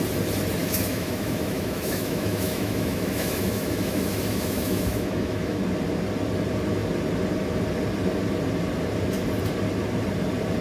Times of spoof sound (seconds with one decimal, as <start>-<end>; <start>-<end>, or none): 0.6-5.6